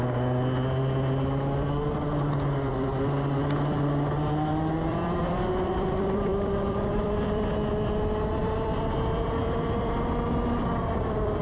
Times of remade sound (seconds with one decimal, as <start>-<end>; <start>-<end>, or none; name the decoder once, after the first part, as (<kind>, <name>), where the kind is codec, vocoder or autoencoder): 4.9-7.4 (vocoder, BigVGAN v2); 8.4-11.4